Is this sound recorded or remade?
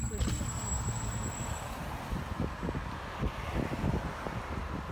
recorded